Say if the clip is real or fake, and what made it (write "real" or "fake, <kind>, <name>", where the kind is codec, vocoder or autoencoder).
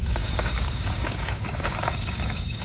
fake, codec, DAC